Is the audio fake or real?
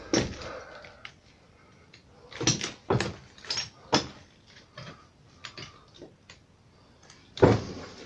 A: real